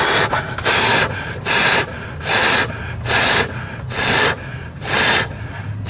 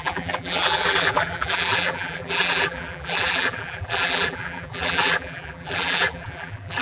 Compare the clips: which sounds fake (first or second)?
second